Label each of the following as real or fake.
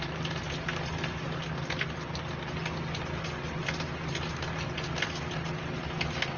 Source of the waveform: real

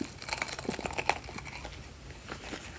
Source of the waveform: real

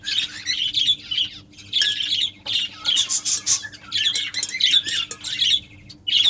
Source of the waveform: real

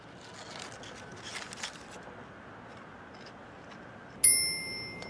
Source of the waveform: real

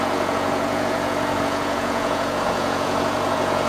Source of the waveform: fake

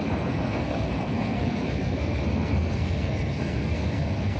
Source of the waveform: fake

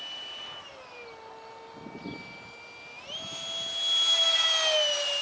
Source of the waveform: real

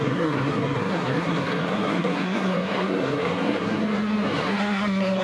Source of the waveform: fake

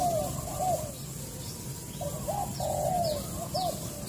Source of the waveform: real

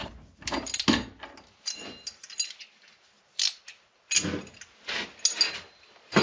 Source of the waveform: real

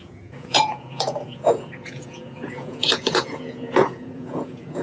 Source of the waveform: fake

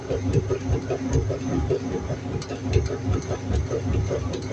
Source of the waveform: real